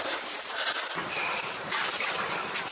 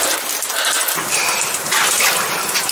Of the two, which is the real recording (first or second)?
second